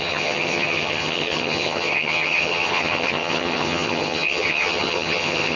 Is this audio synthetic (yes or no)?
yes